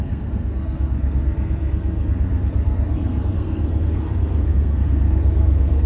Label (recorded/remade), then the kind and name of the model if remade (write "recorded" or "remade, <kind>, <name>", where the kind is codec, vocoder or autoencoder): remade, codec, SNAC